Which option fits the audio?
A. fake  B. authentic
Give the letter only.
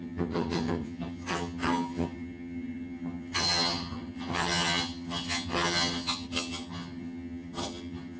A